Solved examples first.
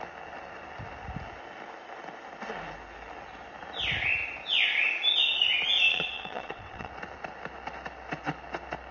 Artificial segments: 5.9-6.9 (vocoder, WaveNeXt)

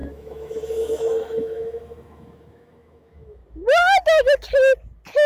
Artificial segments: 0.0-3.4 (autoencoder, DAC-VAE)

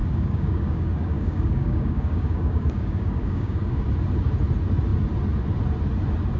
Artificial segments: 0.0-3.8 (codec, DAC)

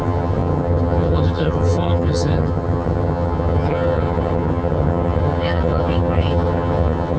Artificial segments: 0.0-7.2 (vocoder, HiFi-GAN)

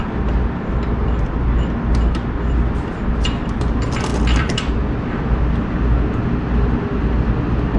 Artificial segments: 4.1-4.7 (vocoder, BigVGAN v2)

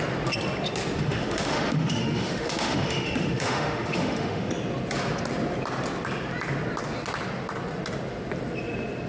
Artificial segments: 1.0-4.5 (autoencoder, DAC-VAE)

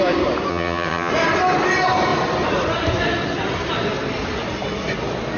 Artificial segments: 0.5-1.1 (vocoder, HiFi-GAN)